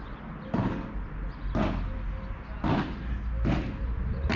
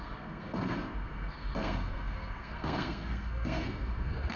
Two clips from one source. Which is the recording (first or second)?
first